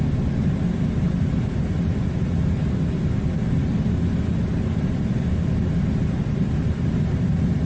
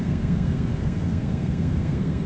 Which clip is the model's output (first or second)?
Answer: second